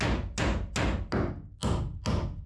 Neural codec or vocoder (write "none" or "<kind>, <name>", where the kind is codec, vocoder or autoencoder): none